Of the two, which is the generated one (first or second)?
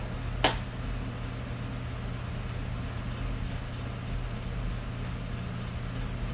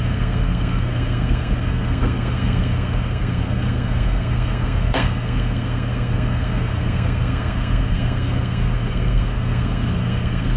second